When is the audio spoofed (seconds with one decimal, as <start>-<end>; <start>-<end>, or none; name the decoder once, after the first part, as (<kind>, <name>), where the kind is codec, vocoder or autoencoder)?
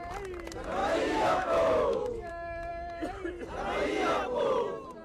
0.8-2.3 (autoencoder, DAC-VAE)